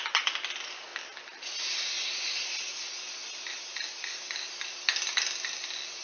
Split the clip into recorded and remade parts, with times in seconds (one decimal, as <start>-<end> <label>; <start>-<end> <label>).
0.0-6.0 recorded